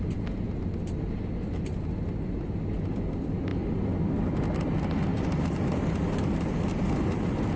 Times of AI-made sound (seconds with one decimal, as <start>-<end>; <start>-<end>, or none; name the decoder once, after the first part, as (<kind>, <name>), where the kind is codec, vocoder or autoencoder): 5.1-6.2 (vocoder, BigVGAN v2); 6.7-7.6